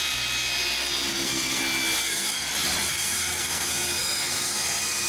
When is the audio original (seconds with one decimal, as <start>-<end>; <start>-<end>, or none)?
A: 0.0-1.1; 1.6-2.0; 2.5-2.9